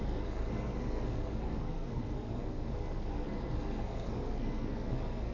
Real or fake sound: fake